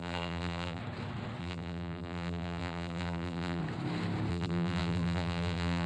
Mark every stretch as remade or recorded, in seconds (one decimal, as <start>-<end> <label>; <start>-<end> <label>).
0.0-0.8 remade; 0.8-1.4 recorded; 1.4-3.6 remade; 3.6-4.3 recorded; 4.3-5.9 remade